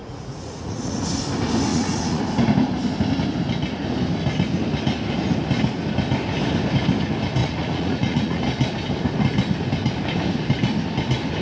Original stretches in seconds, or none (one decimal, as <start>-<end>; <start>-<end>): 1.0-1.7; 2.2-7.4; 8.4-11.4